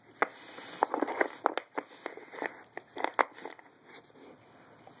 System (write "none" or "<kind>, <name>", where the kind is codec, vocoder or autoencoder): none